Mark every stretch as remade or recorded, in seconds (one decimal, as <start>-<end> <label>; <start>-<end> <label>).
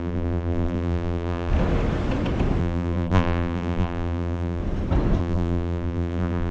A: 0.0-1.5 remade; 1.5-2.6 recorded; 2.6-4.6 remade; 4.6-5.2 recorded; 5.2-6.5 remade